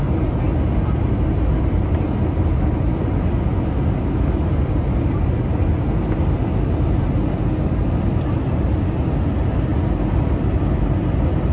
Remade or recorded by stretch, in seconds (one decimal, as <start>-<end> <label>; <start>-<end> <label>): 0.0-11.5 recorded